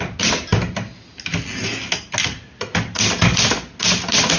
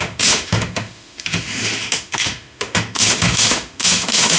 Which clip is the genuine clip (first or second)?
first